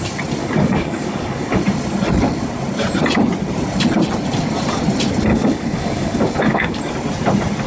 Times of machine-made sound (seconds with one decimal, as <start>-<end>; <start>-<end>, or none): 0.4-1.6; 5.3-6.8